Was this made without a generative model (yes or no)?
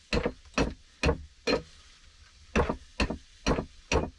yes